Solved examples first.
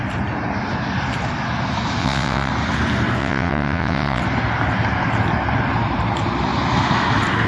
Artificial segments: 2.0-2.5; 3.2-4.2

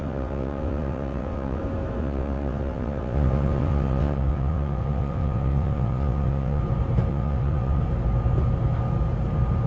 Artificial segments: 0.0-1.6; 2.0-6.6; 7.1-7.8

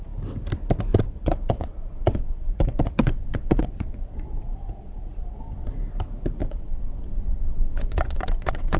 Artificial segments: 0.9-5.7; 6.4-8.8

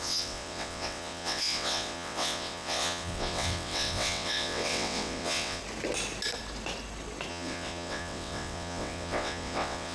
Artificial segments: 0.0-5.6; 7.3-9.9

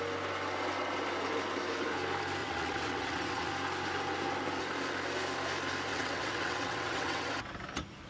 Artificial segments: 2.4-3.5; 5.9-7.3